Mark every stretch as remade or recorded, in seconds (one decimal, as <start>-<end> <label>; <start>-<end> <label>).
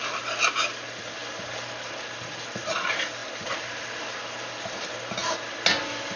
0.0-6.2 recorded